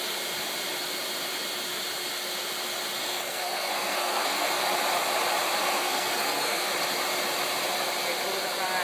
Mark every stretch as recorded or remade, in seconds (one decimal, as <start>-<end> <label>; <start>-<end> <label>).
0.0-3.0 recorded; 3.0-4.6 remade; 4.6-5.6 recorded; 5.6-6.7 remade; 6.7-8.8 recorded